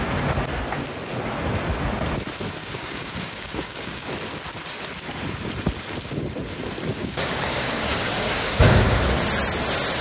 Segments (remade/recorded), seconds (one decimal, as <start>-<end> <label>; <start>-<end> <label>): 0.0-2.6 recorded; 2.6-4.1 remade; 4.1-6.9 recorded; 6.9-9.2 remade; 9.2-10.0 recorded